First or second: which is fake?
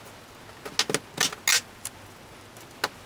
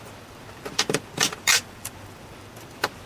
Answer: second